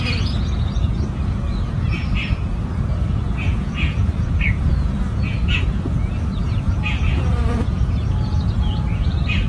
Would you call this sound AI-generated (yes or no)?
yes